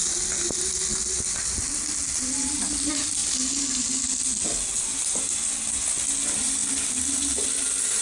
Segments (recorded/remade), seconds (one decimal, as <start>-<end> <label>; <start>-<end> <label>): 0.0-8.0 recorded